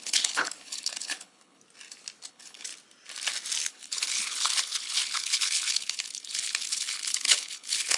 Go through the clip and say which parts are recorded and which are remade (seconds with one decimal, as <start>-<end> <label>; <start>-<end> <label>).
0.0-1.6 remade; 1.6-2.3 recorded; 2.3-2.7 remade; 2.7-3.7 recorded; 3.7-8.0 remade

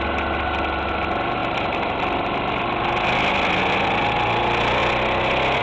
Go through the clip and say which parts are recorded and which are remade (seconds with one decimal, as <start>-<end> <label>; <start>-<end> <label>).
0.0-1.4 recorded; 1.4-3.6 remade; 3.6-5.6 recorded

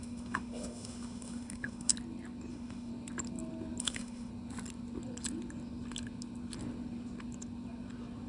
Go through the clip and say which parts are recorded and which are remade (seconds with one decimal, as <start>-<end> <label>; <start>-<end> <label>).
0.0-1.9 remade; 1.9-2.5 recorded; 2.5-2.9 remade; 2.9-3.8 recorded; 3.8-4.3 remade; 4.3-8.3 recorded

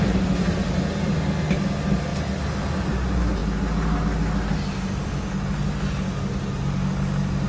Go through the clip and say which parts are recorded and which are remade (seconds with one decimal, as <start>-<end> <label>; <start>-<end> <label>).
0.0-7.5 recorded

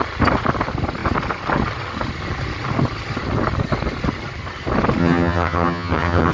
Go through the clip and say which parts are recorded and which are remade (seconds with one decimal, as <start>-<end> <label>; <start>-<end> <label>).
0.0-5.0 recorded; 5.0-6.3 remade